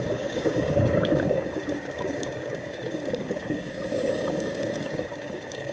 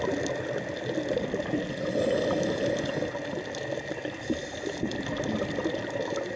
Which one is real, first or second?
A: second